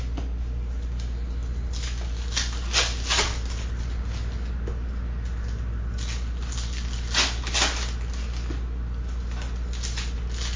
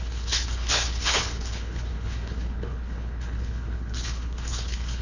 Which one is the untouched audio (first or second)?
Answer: first